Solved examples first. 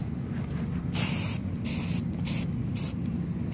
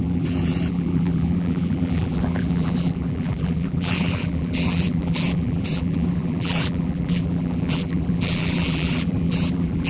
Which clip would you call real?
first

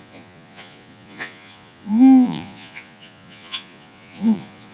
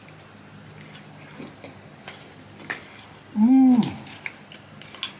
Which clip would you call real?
second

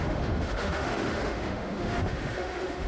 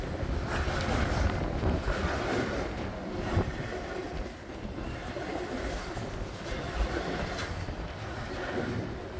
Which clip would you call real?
second